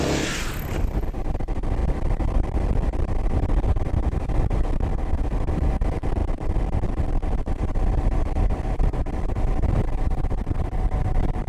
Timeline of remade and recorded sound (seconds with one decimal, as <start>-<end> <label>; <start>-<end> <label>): 0.0-11.5 recorded